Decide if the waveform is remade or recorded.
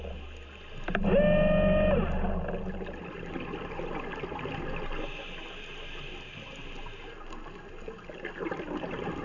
recorded